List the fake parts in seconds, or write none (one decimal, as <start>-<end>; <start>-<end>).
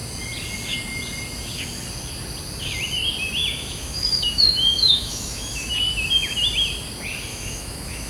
3.4-5.7; 7.3-8.1